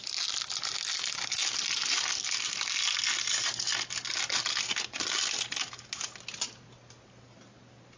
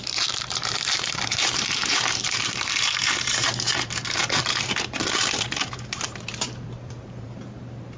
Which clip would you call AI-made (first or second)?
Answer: second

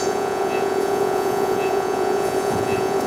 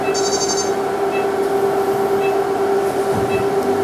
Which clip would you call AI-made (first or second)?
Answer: first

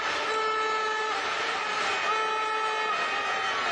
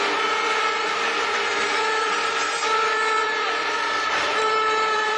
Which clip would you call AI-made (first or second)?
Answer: second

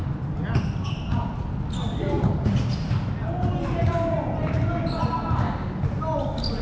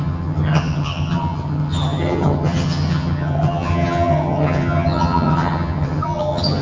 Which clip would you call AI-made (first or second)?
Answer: second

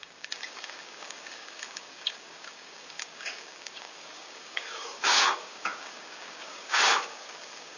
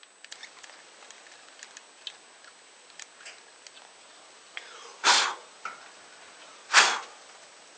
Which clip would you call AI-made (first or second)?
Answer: first